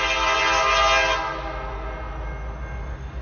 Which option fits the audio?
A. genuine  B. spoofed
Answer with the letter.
A